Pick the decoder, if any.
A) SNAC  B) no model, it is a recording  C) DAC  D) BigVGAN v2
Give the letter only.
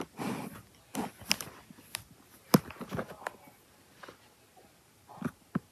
B